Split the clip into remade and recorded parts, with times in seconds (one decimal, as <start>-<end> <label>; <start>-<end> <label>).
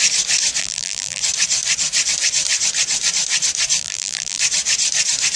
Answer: 0.0-0.6 recorded; 0.6-1.2 remade; 1.2-3.8 recorded; 3.8-4.4 remade; 4.4-5.4 recorded